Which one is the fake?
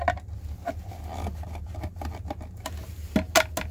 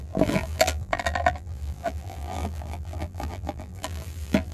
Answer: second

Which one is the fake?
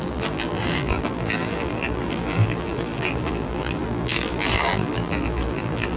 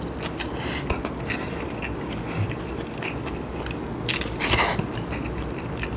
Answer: first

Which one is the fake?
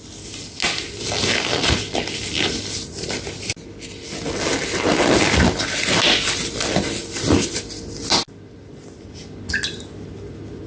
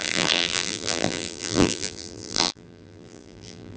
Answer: second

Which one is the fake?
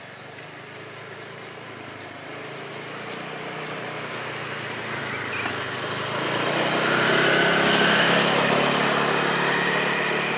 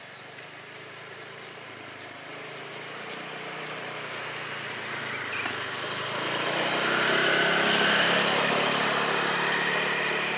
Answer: second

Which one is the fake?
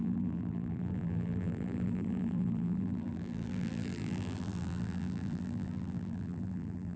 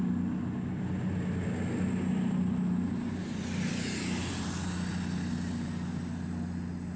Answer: first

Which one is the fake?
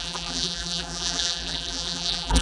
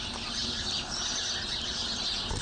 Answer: first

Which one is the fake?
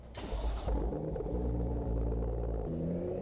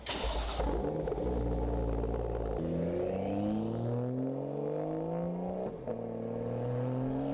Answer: first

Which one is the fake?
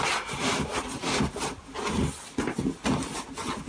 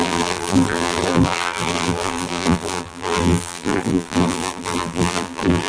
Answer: second